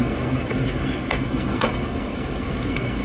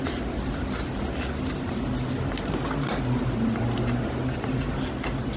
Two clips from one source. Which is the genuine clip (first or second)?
second